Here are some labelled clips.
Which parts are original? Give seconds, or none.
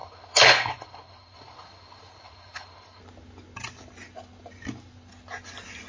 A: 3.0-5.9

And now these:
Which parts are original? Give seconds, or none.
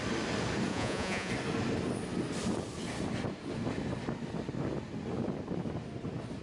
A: 0.0-0.7; 1.3-6.4